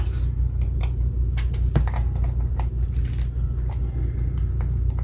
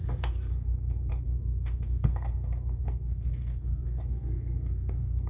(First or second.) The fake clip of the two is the second